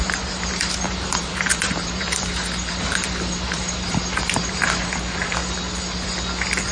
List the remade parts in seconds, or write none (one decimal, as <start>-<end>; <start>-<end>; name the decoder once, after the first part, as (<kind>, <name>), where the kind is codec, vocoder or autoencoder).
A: 0.0-5.4 (vocoder, BigVGAN v2)